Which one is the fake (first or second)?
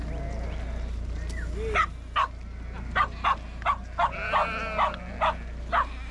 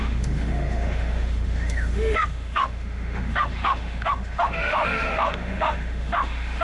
second